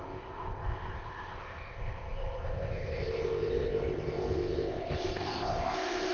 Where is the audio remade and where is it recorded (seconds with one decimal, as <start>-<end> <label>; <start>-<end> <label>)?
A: 0.0-6.1 remade